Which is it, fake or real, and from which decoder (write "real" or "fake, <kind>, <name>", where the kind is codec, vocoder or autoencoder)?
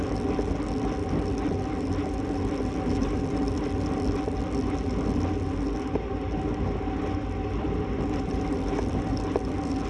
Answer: real